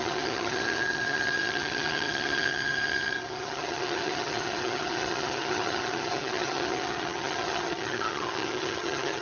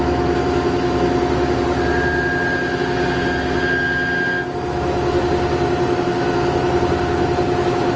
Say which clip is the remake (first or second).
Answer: first